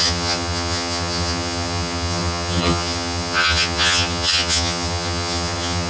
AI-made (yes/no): yes